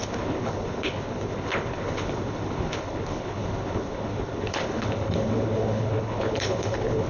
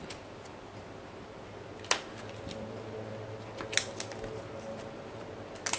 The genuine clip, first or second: second